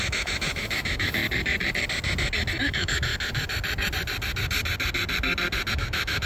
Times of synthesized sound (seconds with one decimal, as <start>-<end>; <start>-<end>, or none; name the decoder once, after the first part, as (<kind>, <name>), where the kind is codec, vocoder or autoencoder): 0.0-1.2 (autoencoder, DAC-VAE); 2.6-3.1; 5.7-6.3